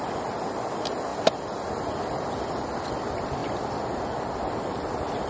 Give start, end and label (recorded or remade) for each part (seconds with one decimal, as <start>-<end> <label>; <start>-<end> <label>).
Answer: 0.0-5.3 recorded